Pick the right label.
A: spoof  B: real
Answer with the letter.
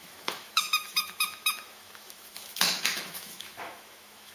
A